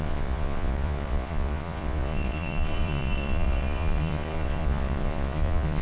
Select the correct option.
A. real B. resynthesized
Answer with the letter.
B